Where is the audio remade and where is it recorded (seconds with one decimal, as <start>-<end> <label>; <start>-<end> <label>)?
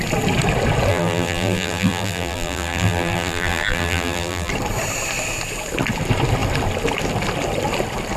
0.0-0.9 recorded; 0.9-4.5 remade; 4.5-8.2 recorded